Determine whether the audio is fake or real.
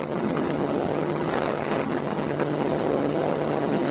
fake